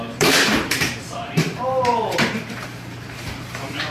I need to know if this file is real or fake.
fake